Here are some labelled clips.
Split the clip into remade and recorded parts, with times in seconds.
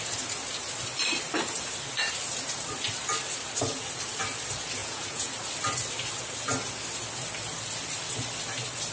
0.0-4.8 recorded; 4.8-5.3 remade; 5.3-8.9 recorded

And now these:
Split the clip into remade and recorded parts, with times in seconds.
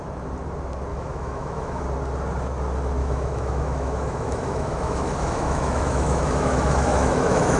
0.0-0.9 recorded; 0.9-1.8 remade; 1.8-3.0 recorded; 3.0-7.6 remade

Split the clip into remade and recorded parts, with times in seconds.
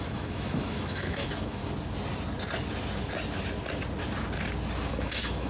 0.0-1.6 remade; 1.6-4.9 recorded; 4.9-5.5 remade